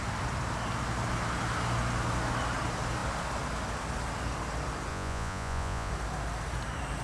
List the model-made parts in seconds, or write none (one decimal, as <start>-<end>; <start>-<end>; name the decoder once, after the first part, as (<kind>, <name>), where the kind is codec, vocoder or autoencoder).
4.9-5.9 (vocoder, Vocos)